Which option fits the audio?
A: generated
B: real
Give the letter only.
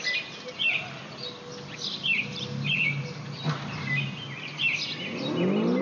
B